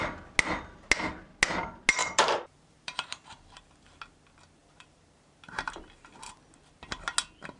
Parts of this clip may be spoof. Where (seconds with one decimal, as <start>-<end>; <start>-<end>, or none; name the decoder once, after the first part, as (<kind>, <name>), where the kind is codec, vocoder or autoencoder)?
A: 2.0-3.6 (vocoder, BigVGAN v2); 4.6-5.8